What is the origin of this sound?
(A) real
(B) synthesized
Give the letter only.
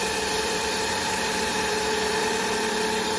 B